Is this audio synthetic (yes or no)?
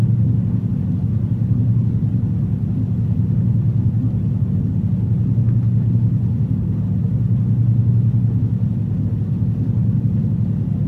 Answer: no